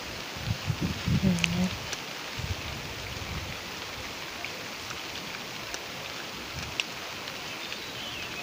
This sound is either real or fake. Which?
real